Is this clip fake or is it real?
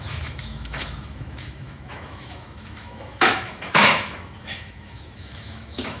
fake